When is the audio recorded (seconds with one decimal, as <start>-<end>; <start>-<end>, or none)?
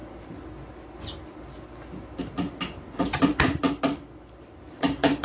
0.0-2.3; 3.6-4.7